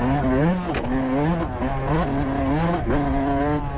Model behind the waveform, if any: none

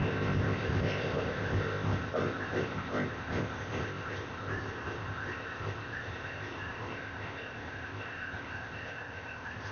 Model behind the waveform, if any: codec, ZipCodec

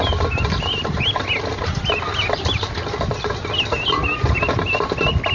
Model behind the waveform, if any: none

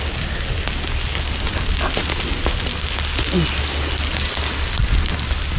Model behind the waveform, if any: none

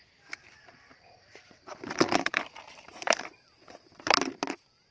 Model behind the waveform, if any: vocoder, BigVGAN v2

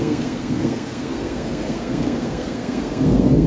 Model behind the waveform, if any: codec, SNAC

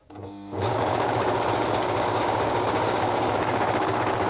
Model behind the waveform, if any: codec, DAC